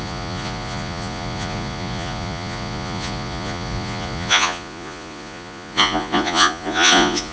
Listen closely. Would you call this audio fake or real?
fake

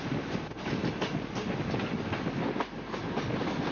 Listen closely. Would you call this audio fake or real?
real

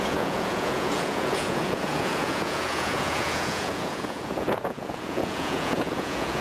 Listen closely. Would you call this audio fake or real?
fake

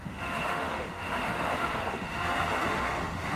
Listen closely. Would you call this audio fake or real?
fake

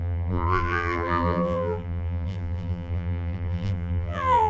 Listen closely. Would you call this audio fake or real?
fake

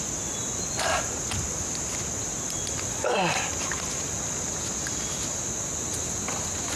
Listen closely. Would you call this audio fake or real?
real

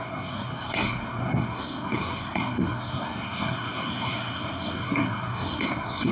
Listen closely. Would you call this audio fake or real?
fake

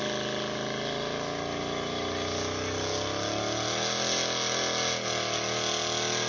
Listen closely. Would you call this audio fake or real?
real